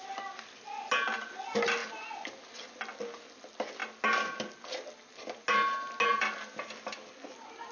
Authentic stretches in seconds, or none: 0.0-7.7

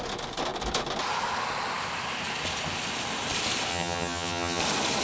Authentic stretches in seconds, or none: 0.0-3.7; 4.6-5.0

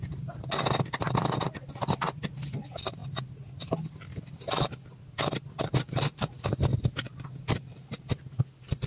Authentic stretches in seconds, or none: 0.0-8.9

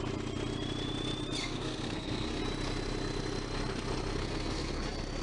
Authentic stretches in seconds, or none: 0.0-1.4; 2.4-4.2; 4.8-5.2

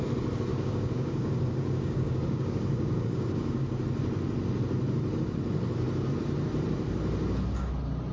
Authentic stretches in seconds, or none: 0.0-0.5; 3.8-8.1

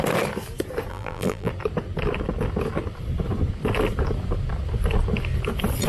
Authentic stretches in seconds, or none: 0.0-0.9; 1.5-5.9